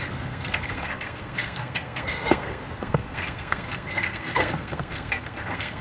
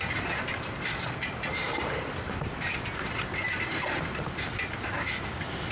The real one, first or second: second